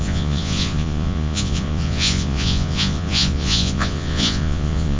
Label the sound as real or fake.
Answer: fake